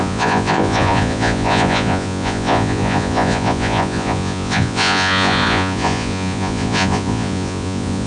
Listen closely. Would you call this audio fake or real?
fake